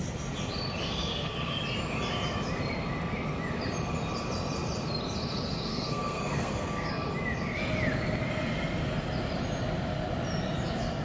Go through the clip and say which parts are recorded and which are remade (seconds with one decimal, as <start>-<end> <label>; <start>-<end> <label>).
0.0-0.8 recorded; 0.8-1.6 remade; 1.6-5.7 recorded; 5.7-6.9 remade; 6.9-11.0 recorded